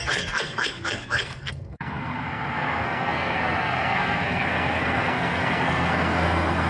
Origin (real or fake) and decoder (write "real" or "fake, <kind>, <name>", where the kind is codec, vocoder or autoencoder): fake, codec, SNAC